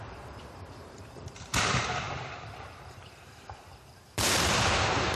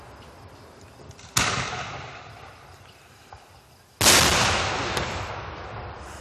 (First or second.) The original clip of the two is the second